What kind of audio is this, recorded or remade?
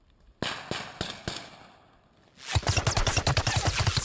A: recorded